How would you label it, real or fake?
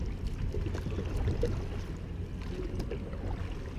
real